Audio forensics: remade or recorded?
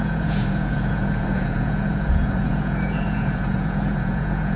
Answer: remade